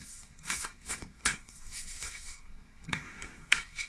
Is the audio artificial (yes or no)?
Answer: yes